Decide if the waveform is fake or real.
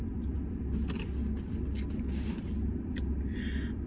real